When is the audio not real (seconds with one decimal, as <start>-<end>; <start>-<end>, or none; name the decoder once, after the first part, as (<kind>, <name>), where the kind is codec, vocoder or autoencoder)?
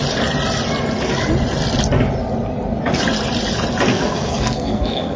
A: 3.9-5.2 (codec, SNAC)